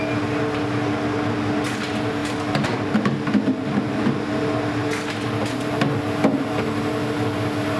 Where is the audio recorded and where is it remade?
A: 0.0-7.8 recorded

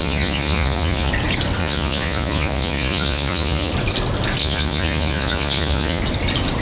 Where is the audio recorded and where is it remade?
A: 0.0-1.1 remade; 1.1-1.6 recorded; 1.6-3.7 remade; 3.7-4.4 recorded; 4.4-6.0 remade; 6.0-6.6 recorded

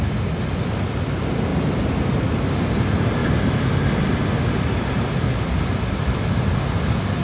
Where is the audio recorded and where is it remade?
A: 0.0-7.2 recorded